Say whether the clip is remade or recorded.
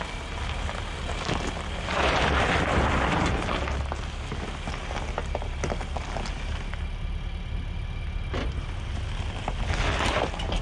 recorded